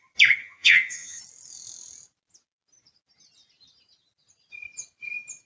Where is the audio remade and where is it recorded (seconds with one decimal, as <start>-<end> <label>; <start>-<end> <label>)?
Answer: 0.0-0.4 recorded; 0.4-1.2 remade; 1.2-5.5 recorded